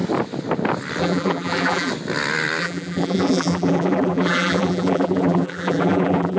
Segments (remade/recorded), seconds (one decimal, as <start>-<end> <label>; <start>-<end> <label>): 0.0-1.0 recorded; 1.0-1.9 remade; 1.9-2.6 recorded; 2.6-6.4 remade